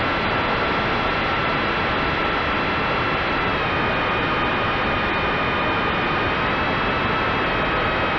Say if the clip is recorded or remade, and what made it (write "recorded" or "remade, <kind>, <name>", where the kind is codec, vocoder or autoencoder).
recorded